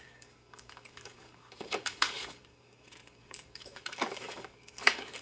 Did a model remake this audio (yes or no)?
yes